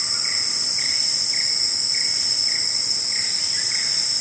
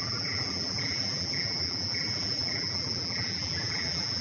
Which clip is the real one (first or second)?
first